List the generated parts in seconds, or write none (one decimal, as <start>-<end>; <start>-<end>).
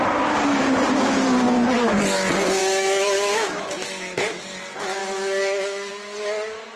2.6-4.4; 5.0-5.9